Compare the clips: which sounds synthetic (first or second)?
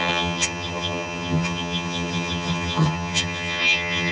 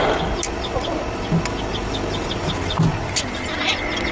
first